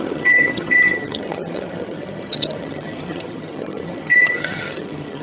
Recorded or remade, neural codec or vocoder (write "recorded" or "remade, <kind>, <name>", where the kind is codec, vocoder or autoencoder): remade, vocoder, HiFi-GAN